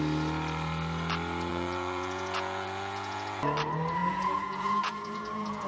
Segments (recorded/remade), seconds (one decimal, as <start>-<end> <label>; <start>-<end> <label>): 0.0-1.5 recorded; 1.5-3.4 remade; 3.4-4.0 recorded; 4.0-5.7 remade